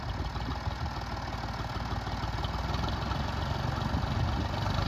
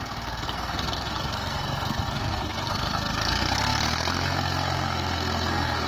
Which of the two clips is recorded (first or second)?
first